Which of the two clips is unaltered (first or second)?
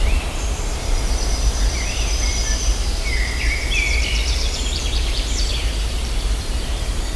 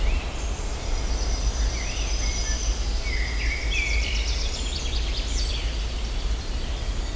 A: second